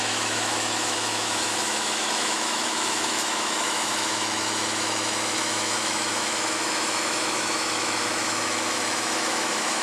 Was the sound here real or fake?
fake